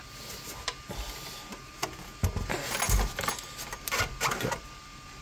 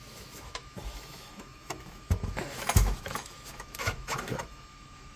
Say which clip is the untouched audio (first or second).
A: first